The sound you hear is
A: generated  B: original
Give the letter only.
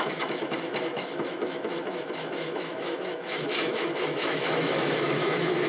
A